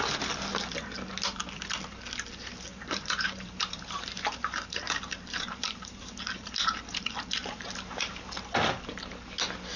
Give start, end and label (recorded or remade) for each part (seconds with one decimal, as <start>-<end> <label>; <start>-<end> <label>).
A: 0.0-2.7 recorded; 2.7-6.5 remade; 6.5-7.4 recorded; 7.4-8.3 remade; 8.3-9.8 recorded